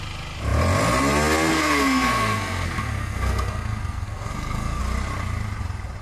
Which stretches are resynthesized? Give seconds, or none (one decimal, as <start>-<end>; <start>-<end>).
1.5-4.8